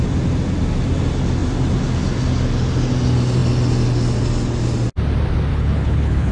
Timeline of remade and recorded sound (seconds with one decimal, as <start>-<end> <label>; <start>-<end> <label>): 0.0-5.5 recorded; 5.5-6.3 remade